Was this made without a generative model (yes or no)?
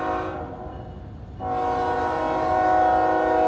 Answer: yes